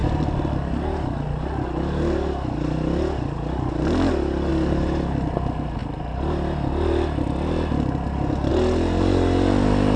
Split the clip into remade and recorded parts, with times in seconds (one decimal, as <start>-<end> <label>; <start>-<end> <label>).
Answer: 0.0-10.0 recorded